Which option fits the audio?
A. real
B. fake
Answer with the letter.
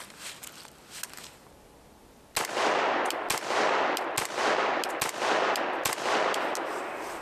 A